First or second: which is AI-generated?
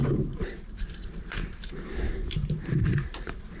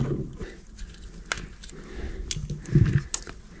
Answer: first